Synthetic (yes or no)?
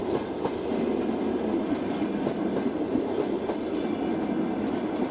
no